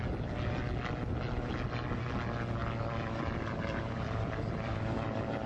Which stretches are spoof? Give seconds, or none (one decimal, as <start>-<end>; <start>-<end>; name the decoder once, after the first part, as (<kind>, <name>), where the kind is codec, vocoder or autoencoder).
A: 2.6-5.5 (vocoder, BigVGAN v2)